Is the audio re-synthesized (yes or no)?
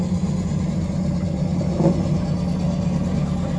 no